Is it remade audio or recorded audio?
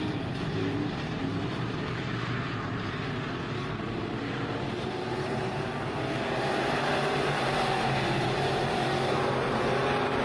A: remade